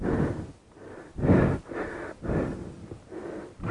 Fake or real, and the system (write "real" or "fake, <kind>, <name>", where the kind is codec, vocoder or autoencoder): real